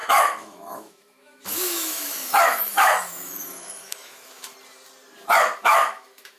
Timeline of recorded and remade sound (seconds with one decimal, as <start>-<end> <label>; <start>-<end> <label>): 0.0-4.5 remade; 4.5-5.6 recorded; 5.6-6.4 remade